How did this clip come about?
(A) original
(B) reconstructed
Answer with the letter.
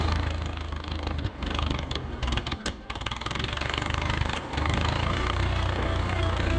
B